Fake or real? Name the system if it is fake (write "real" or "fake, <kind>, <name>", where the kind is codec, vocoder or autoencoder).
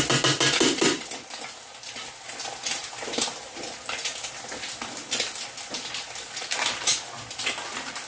real